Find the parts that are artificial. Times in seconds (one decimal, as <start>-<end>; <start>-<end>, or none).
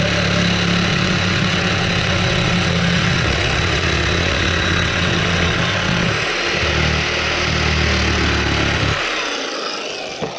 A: 0.9-6.1